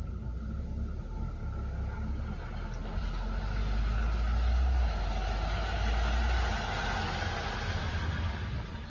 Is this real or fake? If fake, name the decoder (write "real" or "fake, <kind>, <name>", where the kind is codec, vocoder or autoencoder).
real